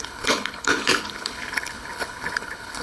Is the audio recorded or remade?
remade